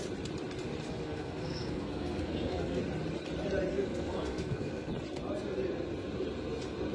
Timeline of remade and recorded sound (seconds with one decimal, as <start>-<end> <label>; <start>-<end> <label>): 0.0-0.9 recorded; 0.9-2.8 remade; 2.8-3.7 recorded; 3.7-4.9 remade; 4.9-6.9 recorded